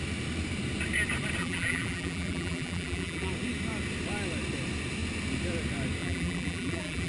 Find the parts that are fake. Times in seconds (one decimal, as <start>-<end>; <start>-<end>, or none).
1.4-3.3; 6.0-7.1